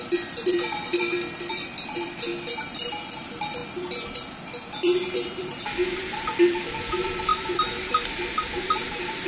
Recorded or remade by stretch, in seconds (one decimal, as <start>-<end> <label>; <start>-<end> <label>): 0.0-2.3 remade; 2.3-3.1 recorded; 3.1-3.6 remade; 3.6-4.7 recorded; 4.7-9.3 remade